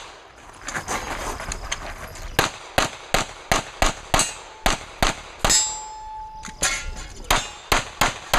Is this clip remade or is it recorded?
recorded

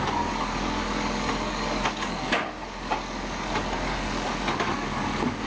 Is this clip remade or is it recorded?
remade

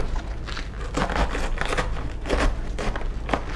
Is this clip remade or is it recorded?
recorded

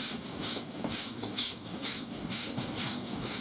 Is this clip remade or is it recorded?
remade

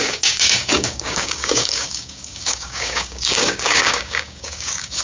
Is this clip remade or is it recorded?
remade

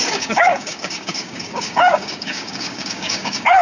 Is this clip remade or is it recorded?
remade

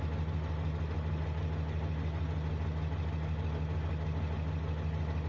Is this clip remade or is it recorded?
recorded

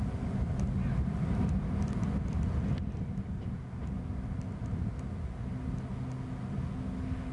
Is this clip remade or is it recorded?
recorded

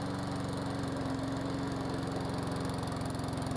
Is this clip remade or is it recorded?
recorded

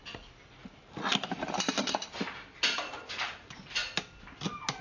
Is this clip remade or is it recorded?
recorded